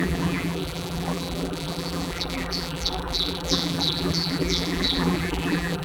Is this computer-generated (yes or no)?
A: yes